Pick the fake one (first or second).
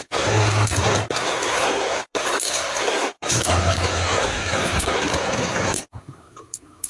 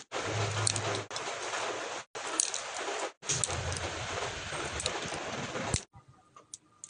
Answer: first